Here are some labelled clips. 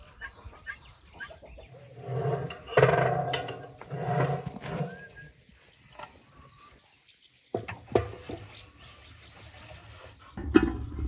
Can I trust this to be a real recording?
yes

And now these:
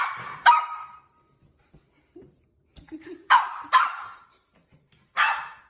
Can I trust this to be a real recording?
no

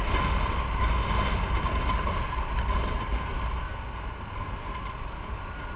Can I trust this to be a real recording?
yes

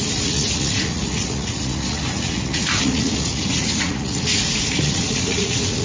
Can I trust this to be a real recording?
no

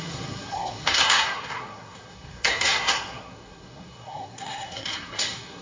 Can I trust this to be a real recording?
no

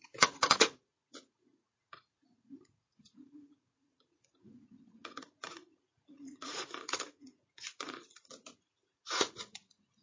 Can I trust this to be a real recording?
no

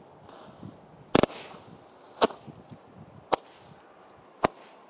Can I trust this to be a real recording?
yes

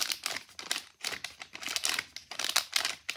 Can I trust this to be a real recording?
yes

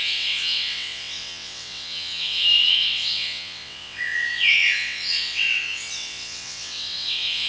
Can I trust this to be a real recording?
no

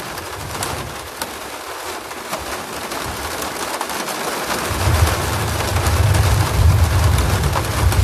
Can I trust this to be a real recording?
yes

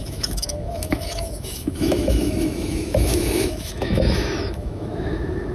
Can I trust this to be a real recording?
no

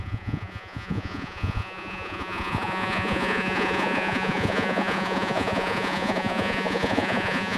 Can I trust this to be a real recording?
no